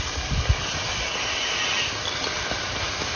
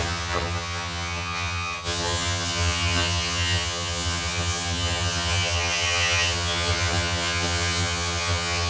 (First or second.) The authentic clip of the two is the first